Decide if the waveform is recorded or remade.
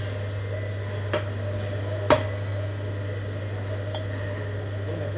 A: recorded